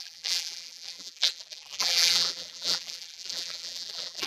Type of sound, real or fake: fake